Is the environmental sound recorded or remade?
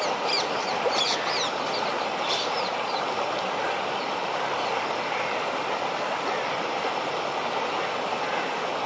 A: recorded